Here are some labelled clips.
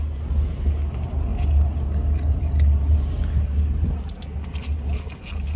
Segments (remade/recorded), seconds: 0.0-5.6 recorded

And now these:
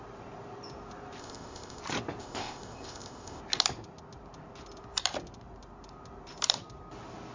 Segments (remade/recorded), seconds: 0.0-1.2 recorded; 1.2-1.8 remade; 1.8-2.2 recorded; 2.2-3.4 remade; 3.4-7.3 recorded

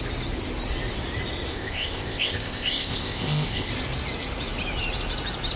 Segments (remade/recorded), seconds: 0.0-1.5 recorded; 1.5-3.7 remade; 3.7-5.6 recorded

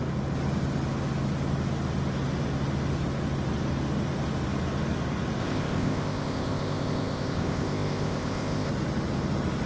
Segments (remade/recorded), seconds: 0.0-5.4 recorded; 5.4-8.7 remade; 8.7-9.7 recorded

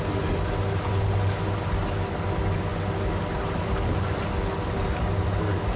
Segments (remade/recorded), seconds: 0.0-5.8 recorded

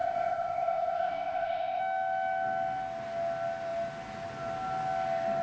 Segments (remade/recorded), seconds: 0.0-1.8 remade; 1.8-5.4 recorded